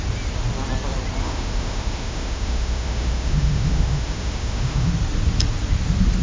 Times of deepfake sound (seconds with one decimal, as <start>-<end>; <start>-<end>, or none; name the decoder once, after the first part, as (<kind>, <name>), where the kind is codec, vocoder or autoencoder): 1.2-4.9 (autoencoder, DAC-VAE)